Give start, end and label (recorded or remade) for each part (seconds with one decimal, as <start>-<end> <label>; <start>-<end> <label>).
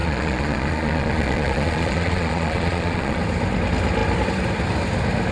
0.0-3.2 remade; 3.2-5.3 recorded